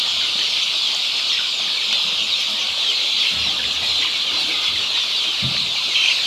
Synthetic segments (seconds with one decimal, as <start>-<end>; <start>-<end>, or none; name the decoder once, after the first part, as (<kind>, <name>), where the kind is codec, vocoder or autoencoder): 2.6-6.3 (vocoder, BigVGAN v2)